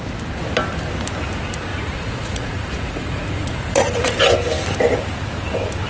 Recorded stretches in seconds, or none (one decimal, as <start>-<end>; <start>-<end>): 0.0-1.7; 4.2-5.9